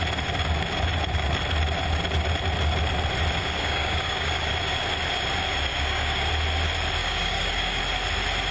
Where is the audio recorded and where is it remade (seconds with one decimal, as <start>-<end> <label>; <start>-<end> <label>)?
0.0-3.4 recorded; 3.4-4.5 remade; 4.5-5.7 recorded; 5.7-6.3 remade; 6.3-7.0 recorded; 7.0-7.8 remade; 7.8-8.5 recorded